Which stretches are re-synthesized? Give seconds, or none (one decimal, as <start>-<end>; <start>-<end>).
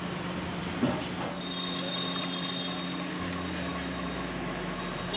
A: 3.7-4.8